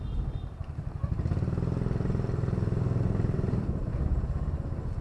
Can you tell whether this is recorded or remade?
recorded